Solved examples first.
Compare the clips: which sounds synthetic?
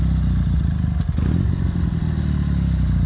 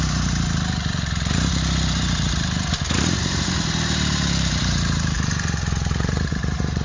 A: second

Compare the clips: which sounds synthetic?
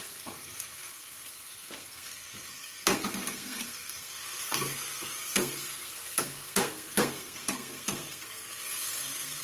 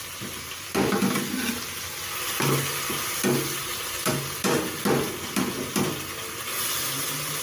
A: first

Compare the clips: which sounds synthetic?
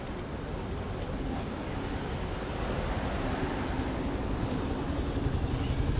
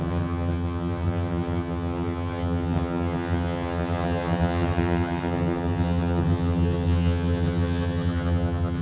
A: second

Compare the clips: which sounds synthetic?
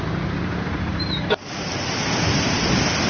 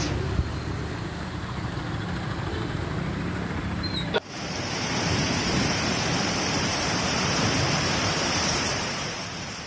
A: second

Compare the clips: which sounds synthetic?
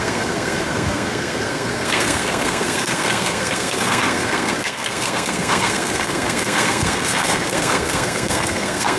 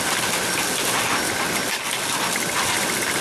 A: first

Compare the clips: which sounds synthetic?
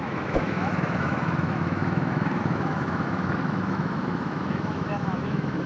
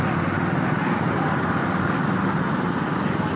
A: first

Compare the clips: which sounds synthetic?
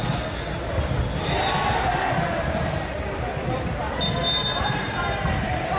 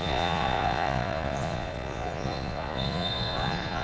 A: second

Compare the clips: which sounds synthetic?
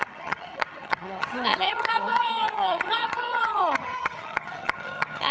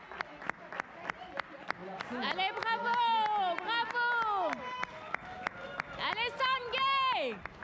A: first